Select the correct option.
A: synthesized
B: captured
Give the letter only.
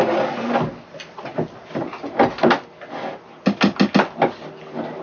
B